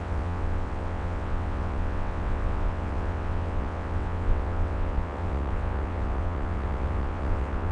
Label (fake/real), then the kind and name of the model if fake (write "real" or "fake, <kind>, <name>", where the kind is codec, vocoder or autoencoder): fake, vocoder, WaveNeXt